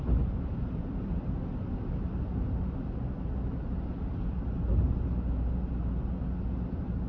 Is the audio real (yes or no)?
yes